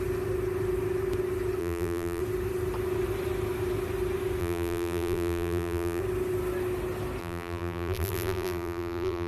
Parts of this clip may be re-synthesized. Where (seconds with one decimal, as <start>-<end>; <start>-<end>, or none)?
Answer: 1.6-2.2; 4.4-6.0; 7.2-9.3